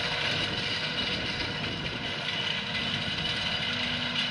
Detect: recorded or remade recorded